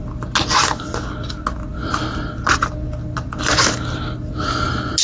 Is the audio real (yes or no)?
yes